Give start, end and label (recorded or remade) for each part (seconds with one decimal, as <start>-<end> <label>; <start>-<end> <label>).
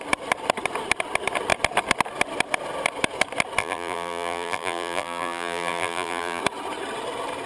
0.0-3.6 recorded; 3.6-6.4 remade; 6.4-7.5 recorded